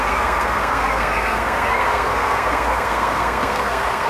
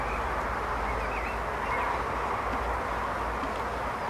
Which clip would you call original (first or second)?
second